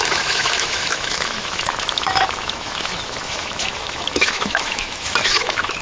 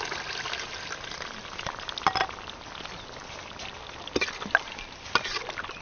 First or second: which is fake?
first